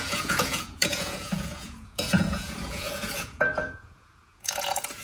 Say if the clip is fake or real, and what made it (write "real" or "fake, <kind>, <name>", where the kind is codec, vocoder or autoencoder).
fake, vocoder, Vocos